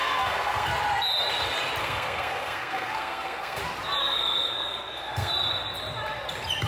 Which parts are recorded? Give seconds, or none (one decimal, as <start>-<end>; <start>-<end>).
0.7-1.8; 3.6-4.0; 5.3-6.7

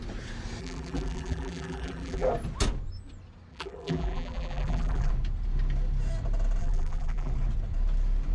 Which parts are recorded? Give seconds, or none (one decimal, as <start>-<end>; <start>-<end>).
0.0-0.6; 2.3-3.5; 5.1-6.6; 7.3-8.3